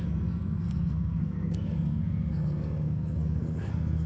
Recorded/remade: remade